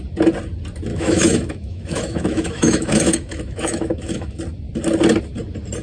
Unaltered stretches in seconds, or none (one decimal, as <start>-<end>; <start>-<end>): 0.0-0.9; 4.4-5.8